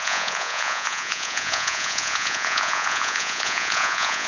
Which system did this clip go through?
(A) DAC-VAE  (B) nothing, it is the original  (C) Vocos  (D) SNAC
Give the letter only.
C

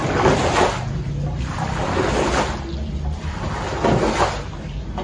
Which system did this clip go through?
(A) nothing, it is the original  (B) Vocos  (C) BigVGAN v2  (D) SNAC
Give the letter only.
A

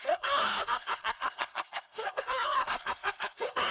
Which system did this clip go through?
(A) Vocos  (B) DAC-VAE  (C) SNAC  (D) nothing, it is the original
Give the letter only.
C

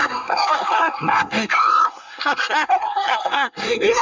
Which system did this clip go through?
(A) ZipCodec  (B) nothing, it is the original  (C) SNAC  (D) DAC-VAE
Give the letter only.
C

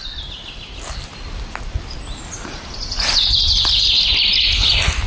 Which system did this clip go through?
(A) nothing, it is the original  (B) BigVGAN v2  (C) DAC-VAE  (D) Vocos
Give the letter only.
A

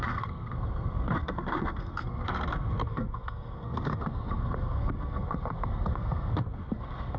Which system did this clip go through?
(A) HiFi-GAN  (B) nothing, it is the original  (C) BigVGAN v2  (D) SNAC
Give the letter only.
D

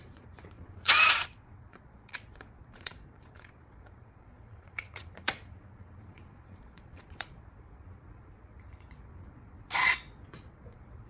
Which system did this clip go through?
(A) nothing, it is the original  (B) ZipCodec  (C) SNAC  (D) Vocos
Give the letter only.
D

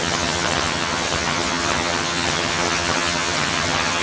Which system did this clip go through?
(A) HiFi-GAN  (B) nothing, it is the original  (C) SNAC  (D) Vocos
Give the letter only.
A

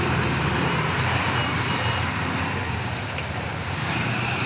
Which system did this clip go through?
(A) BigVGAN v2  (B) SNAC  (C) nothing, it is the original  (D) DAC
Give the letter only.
A